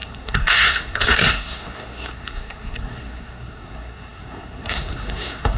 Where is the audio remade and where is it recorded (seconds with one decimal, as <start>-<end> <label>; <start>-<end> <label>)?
0.0-5.6 remade